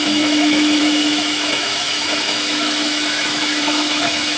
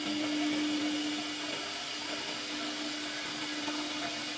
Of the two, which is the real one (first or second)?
second